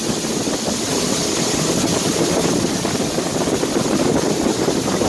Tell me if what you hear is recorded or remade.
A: recorded